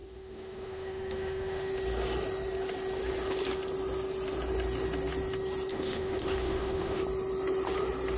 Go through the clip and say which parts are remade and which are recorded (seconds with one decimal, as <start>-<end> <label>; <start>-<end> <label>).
0.0-1.7 remade; 1.7-5.7 recorded; 5.7-7.0 remade; 7.0-8.2 recorded